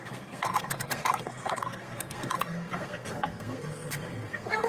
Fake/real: fake